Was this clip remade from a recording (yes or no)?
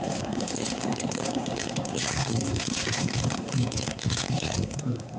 yes